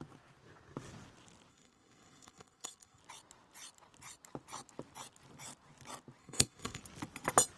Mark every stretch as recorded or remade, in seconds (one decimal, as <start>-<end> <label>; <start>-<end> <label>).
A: 0.0-1.5 recorded; 1.5-3.0 remade; 3.0-6.2 recorded; 6.2-6.8 remade; 6.8-7.6 recorded